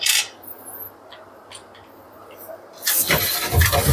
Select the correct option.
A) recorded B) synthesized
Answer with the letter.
A